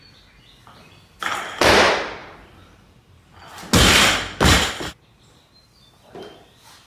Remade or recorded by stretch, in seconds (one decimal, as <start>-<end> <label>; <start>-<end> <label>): 0.0-6.9 recorded